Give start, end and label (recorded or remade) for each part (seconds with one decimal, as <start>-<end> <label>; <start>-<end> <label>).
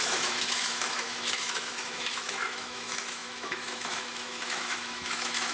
0.0-5.5 remade